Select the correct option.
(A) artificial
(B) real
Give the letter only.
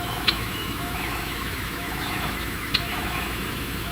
A